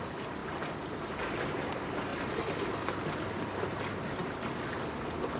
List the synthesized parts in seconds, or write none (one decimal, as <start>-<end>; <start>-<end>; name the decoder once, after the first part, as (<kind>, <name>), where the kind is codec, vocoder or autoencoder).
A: none